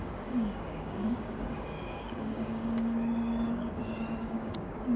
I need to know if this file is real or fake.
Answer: fake